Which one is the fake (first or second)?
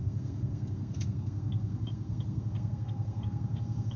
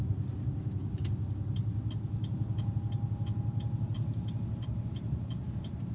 first